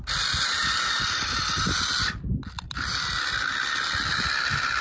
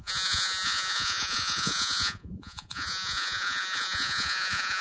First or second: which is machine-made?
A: second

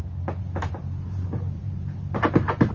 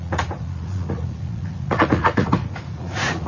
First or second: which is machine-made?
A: second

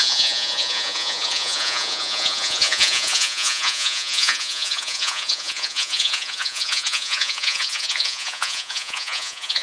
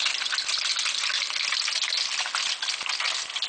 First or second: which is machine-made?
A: first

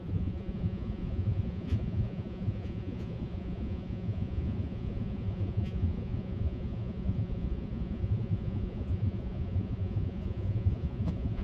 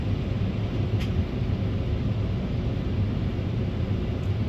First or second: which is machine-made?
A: first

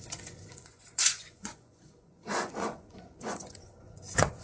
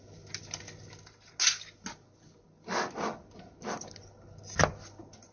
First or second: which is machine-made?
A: first